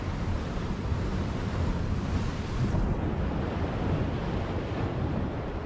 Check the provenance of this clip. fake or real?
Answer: real